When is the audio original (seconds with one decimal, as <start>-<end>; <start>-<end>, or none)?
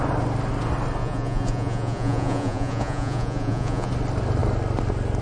0.0-1.0; 3.9-5.2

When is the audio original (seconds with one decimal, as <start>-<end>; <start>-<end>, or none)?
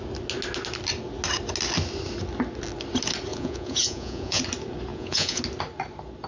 0.0-3.3; 4.4-4.9; 5.4-6.3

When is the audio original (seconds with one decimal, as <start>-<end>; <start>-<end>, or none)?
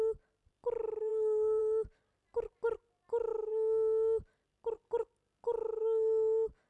0.0-6.7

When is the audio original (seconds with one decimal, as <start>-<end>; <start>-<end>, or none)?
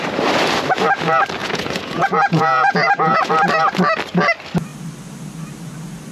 0.0-1.4; 3.3-6.1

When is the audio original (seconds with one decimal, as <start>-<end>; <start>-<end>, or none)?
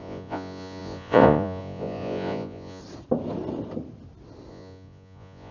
2.8-4.5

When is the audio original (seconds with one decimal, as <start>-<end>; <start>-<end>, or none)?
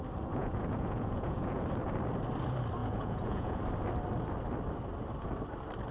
0.0-0.4; 1.6-2.8; 3.6-5.9